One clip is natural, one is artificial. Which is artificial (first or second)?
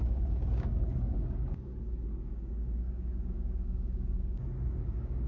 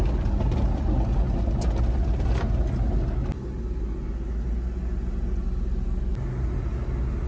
first